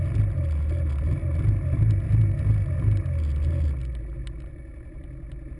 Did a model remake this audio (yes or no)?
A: no